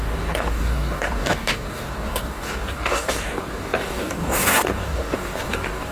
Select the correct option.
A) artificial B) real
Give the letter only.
A